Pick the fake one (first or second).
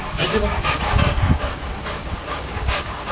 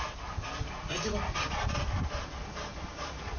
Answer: first